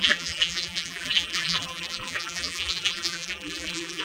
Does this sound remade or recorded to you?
remade